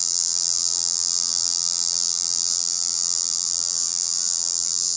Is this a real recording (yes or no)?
no